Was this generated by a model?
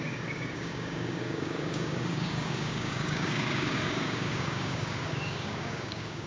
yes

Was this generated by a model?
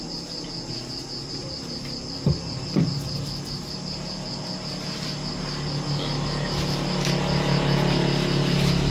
no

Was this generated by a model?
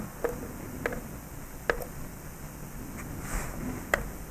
no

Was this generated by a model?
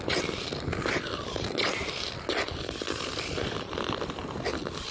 no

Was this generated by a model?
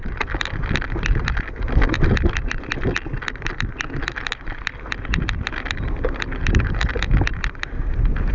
no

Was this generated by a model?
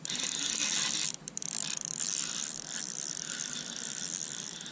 no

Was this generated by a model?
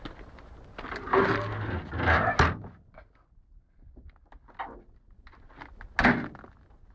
no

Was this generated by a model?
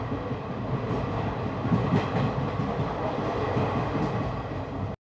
no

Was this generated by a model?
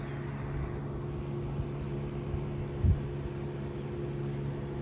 no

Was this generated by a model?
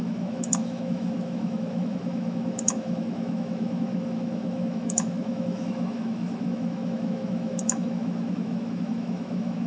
yes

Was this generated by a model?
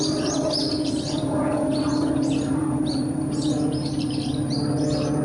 yes